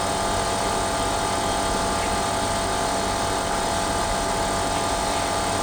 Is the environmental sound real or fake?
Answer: real